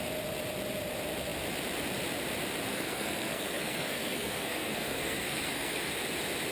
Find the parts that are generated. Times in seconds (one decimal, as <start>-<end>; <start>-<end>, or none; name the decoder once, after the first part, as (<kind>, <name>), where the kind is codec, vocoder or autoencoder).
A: 2.7-5.9 (codec, SNAC)